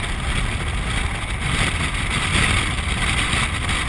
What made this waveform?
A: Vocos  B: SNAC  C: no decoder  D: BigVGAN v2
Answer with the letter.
C